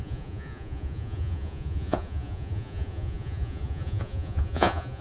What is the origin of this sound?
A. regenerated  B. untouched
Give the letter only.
A